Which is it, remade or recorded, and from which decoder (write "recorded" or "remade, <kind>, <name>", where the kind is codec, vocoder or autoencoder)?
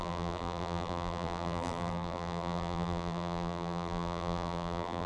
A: remade, vocoder, BigVGAN v2